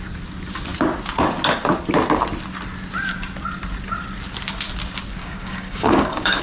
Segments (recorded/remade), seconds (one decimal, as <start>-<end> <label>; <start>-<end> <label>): 0.0-5.2 recorded; 5.2-6.4 remade

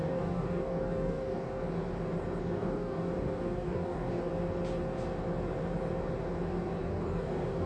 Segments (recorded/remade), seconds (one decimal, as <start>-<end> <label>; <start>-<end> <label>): 0.0-1.6 remade; 1.6-2.4 recorded; 2.4-4.3 remade; 4.3-6.8 recorded; 6.8-7.7 remade

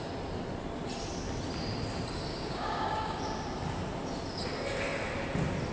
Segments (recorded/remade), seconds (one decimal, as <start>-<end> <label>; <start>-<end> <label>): 0.0-2.3 recorded; 2.3-3.2 remade; 3.2-5.7 recorded

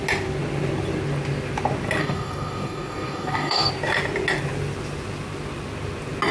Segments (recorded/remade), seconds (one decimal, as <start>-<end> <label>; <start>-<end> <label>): 0.0-2.0 recorded; 2.0-3.7 remade; 3.7-6.3 recorded

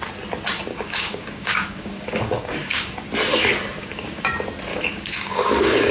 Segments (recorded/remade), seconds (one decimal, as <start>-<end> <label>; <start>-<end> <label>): 0.0-0.7 recorded; 0.7-2.9 remade; 2.9-3.8 recorded; 3.8-4.3 remade; 4.3-4.7 recorded; 4.7-5.9 remade

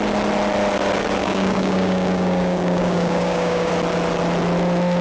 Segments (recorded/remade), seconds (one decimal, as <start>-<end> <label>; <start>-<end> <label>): 0.0-1.2 recorded; 1.2-3.7 remade; 3.7-5.0 recorded